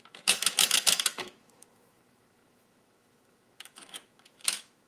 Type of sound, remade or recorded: remade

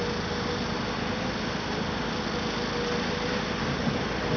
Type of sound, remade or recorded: recorded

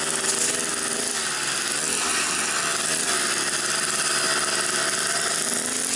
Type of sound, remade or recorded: recorded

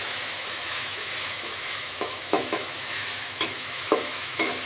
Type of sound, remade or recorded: remade